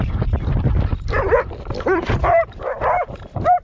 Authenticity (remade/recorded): remade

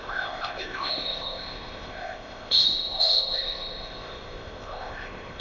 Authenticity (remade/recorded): remade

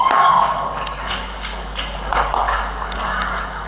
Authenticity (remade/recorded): remade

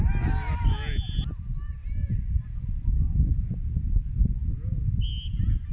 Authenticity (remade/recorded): recorded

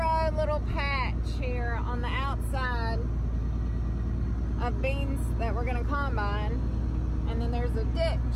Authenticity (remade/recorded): recorded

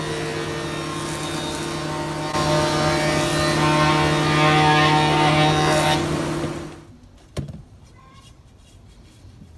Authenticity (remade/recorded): recorded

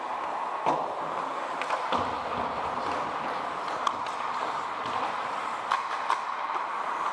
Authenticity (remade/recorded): recorded